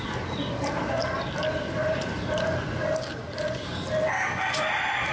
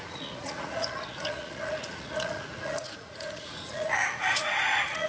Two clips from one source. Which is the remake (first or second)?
second